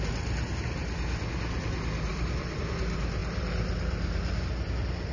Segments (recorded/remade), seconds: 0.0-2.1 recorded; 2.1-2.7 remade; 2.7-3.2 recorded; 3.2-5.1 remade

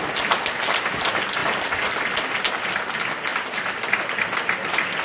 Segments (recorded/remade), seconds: 0.0-1.4 recorded; 1.4-2.0 remade; 2.0-3.3 recorded; 3.3-3.9 remade; 3.9-5.0 recorded

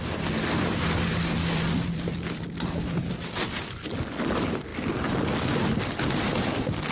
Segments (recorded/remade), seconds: 0.0-4.7 remade; 4.7-5.5 recorded; 5.5-6.9 remade

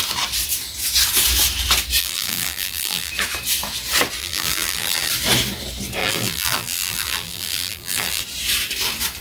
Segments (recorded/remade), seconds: 0.0-2.0 recorded; 2.0-3.1 remade; 3.1-4.2 recorded; 4.2-5.1 remade; 5.1-6.0 recorded; 6.0-8.2 remade; 8.2-9.2 recorded

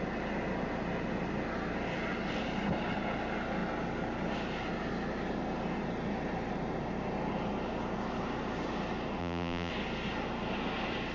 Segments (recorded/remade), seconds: 0.0-9.2 recorded; 9.2-9.7 remade; 9.7-11.1 recorded

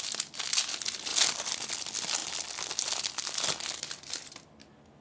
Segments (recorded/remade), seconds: 0.0-5.0 recorded

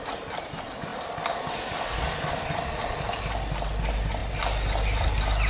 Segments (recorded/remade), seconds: 0.0-5.5 recorded